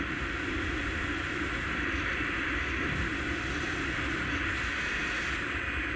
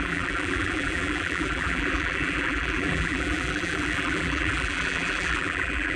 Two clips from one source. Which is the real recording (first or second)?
first